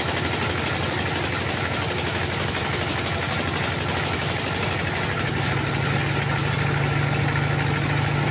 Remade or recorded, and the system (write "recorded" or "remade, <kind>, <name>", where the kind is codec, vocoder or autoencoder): recorded